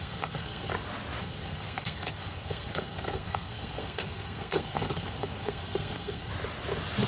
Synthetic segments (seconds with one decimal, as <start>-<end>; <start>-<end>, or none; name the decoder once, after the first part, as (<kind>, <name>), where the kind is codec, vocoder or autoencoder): 0.0-0.7 (codec, SNAC); 1.2-6.3